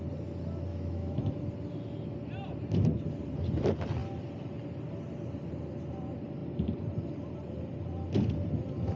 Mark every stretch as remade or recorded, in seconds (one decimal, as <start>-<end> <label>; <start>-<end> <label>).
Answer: 0.0-0.7 recorded; 0.7-1.3 remade; 1.3-9.0 recorded